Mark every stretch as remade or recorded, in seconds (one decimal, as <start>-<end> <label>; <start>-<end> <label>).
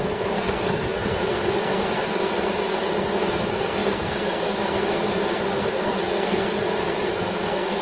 0.0-7.8 remade